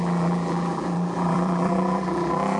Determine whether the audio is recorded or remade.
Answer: remade